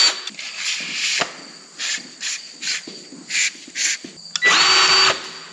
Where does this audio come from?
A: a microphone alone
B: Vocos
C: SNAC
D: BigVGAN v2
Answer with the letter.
A